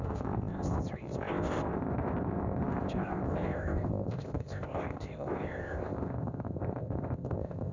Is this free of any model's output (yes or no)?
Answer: no